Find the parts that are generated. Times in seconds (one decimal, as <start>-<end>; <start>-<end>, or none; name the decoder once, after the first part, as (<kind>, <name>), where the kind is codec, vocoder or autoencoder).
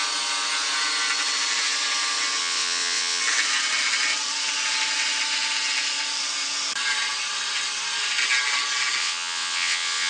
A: 2.4-3.2 (vocoder, WaveNeXt); 9.0-10.1